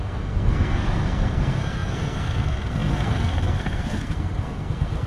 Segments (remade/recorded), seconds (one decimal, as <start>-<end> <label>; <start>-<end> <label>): 0.0-5.1 remade